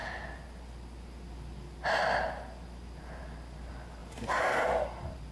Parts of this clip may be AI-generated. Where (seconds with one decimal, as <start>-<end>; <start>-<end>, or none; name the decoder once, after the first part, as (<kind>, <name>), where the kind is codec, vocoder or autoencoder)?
none